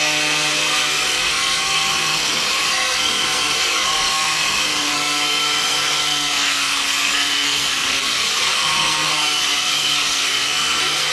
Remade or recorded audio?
remade